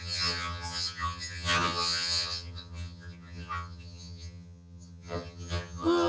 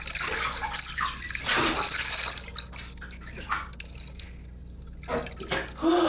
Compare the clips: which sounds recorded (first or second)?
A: second